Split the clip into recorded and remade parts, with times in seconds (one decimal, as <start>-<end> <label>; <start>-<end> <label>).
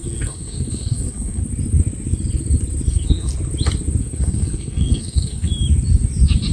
0.0-1.4 remade; 1.4-2.9 recorded; 2.9-3.3 remade; 3.3-4.0 recorded; 4.0-5.5 remade; 5.5-6.5 recorded